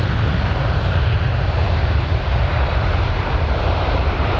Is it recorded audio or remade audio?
remade